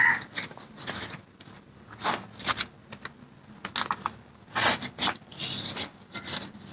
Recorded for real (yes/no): yes